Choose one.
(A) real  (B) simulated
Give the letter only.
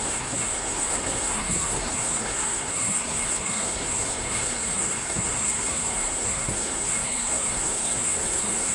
B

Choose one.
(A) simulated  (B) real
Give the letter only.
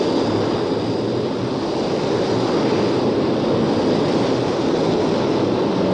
B